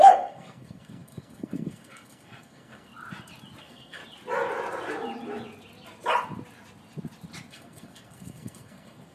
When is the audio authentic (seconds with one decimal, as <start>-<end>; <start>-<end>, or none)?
2.9-3.6; 4.0-7.5